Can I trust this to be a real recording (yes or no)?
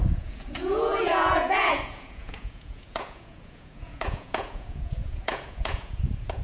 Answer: no